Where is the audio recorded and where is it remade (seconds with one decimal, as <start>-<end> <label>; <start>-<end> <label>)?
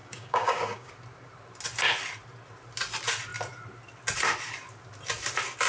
0.0-0.9 remade; 0.9-5.7 recorded